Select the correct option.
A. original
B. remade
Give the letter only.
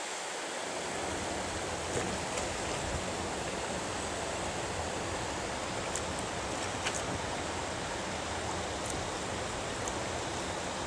A